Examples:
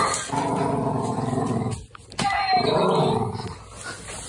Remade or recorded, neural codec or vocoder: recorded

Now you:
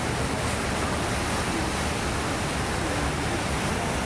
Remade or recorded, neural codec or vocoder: recorded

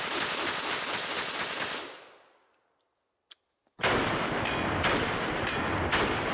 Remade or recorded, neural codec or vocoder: recorded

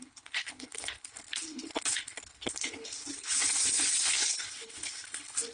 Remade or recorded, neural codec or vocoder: remade, codec, HILCodec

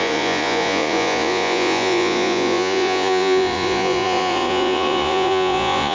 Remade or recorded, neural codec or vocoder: remade, vocoder, Vocos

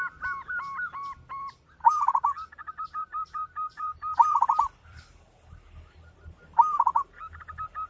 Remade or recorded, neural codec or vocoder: remade, vocoder, BigVGAN v2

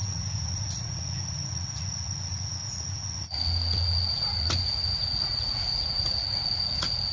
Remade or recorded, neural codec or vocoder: remade, vocoder, Vocos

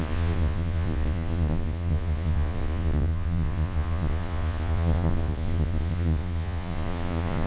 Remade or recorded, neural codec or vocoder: remade, vocoder, Vocos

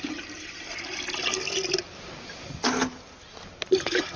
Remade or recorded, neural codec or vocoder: recorded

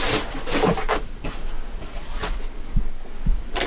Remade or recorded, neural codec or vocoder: recorded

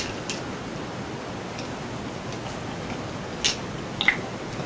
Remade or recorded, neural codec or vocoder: recorded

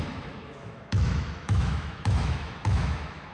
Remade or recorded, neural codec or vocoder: remade, autoencoder, DAC-VAE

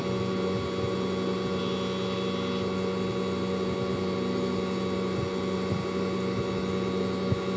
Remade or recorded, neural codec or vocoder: recorded